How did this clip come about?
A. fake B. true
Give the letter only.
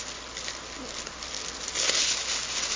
B